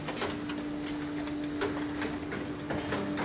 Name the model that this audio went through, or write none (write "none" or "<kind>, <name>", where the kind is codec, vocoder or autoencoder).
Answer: none